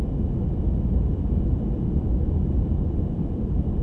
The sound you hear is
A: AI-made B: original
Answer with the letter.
A